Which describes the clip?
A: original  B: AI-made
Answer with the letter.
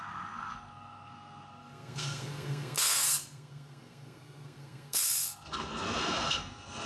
B